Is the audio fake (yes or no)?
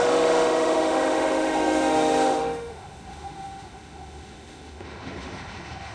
yes